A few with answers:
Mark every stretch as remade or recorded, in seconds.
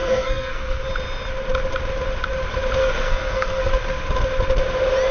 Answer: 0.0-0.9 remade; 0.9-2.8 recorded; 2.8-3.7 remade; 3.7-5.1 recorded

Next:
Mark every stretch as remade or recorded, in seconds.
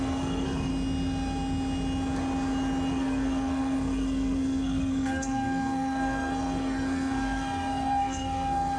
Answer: 0.0-0.7 remade; 0.7-2.9 recorded; 2.9-8.8 remade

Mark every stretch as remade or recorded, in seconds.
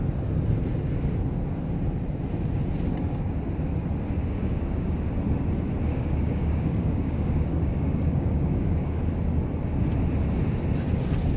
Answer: 0.0-4.2 recorded; 4.2-4.9 remade; 4.9-5.9 recorded; 5.9-9.1 remade; 9.1-11.4 recorded